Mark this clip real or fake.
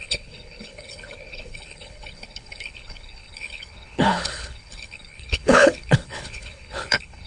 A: fake